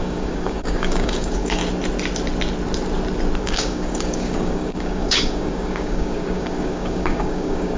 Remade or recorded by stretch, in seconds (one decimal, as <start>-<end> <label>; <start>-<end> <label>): 0.0-1.6 remade; 1.6-3.4 recorded; 3.4-7.8 remade